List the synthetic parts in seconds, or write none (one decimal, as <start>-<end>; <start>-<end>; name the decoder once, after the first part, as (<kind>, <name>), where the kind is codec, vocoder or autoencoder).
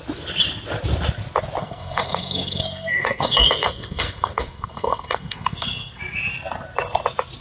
1.6-6.0 (codec, SNAC)